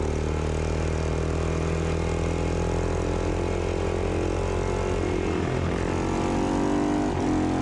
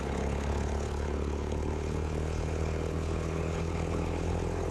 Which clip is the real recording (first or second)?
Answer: first